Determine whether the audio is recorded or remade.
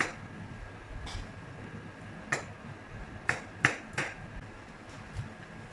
recorded